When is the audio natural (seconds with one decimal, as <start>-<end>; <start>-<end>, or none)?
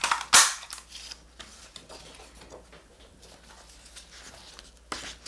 0.0-5.3